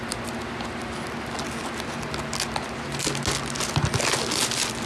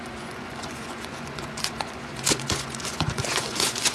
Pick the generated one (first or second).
second